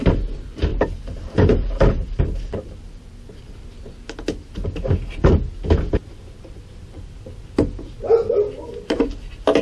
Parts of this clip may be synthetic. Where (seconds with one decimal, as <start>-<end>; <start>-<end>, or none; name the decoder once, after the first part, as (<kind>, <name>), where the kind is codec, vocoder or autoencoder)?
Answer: 0.7-3.5 (vocoder, BigVGAN v2)